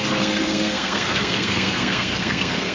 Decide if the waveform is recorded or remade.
remade